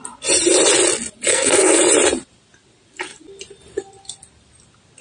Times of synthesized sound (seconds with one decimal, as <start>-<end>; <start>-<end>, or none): 1.3-1.8